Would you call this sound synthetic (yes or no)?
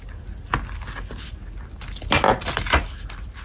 no